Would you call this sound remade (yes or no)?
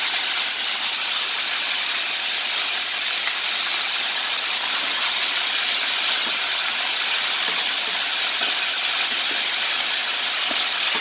no